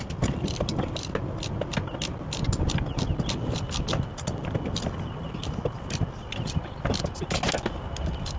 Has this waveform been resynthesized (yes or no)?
no